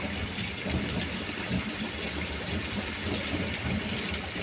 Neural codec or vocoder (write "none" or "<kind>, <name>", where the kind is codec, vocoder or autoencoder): none